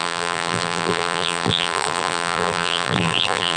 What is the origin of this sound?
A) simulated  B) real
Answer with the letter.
A